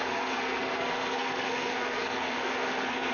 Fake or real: fake